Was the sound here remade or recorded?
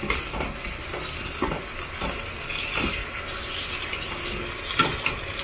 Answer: recorded